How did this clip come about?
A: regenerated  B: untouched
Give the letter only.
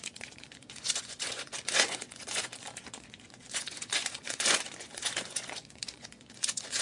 A